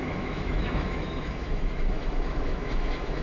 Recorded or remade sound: remade